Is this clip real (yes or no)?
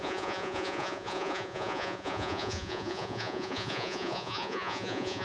no